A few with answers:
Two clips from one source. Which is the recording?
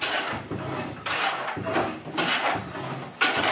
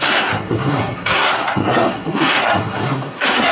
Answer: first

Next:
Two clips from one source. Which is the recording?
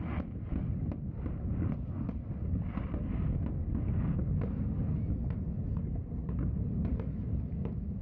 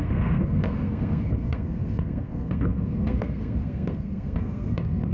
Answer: first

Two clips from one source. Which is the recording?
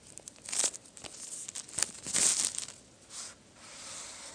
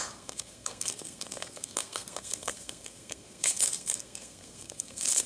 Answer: first